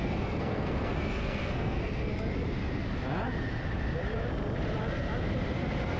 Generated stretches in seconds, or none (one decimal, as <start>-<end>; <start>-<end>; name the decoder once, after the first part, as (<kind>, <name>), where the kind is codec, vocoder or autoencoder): 0.0-2.1 (codec, SNAC)